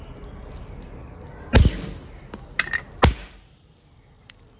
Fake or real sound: real